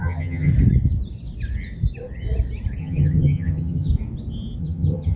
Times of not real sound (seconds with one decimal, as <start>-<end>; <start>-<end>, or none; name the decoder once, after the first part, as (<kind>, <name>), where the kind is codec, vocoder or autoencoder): 0.0-0.5 (vocoder, HiFi-GAN); 2.8-3.9; 4.6-5.2